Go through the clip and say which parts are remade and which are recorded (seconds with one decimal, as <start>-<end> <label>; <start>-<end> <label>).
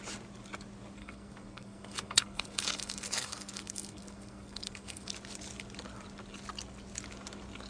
0.0-1.0 recorded; 1.0-5.1 remade; 5.1-7.7 recorded